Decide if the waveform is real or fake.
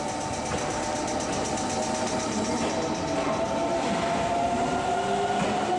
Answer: real